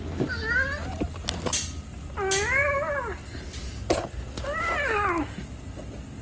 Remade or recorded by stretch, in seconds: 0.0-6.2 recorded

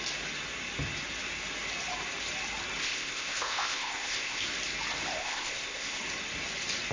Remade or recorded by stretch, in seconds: 0.0-2.8 recorded; 2.8-4.4 remade; 4.4-5.2 recorded; 5.2-6.0 remade; 6.0-6.9 recorded

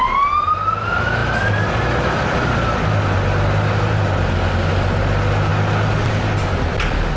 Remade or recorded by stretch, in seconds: 0.0-7.2 recorded

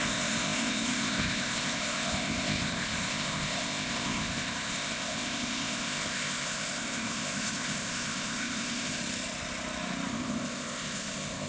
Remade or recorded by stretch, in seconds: 0.0-9.0 remade; 9.0-10.1 recorded; 10.1-11.5 remade

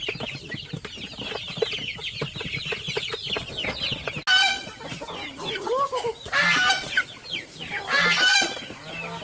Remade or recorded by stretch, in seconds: 0.0-9.2 recorded

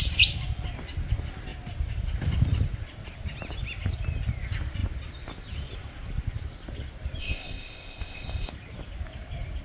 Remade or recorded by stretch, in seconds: 0.0-7.2 recorded; 7.2-8.5 remade; 8.5-9.6 recorded

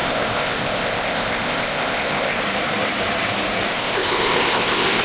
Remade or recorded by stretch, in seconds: 0.0-2.4 remade; 2.4-3.7 recorded; 3.7-5.0 remade

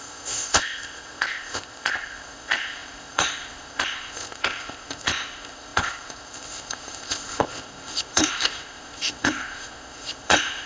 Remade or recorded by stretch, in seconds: 0.0-10.7 remade